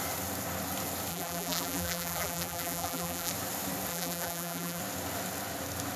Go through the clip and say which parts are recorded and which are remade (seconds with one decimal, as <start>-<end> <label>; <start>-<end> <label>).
0.0-1.1 recorded; 1.1-3.3 remade; 3.3-3.9 recorded; 3.9-4.8 remade; 4.8-6.0 recorded